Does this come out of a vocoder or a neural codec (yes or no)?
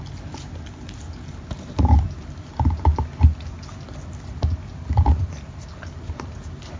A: no